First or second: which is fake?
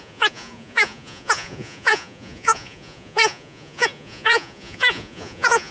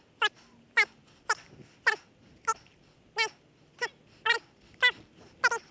first